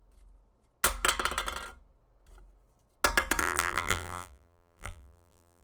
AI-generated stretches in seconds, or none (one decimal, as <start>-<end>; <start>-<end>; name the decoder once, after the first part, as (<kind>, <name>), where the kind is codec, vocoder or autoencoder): 3.4-5.6 (vocoder, BigVGAN v2)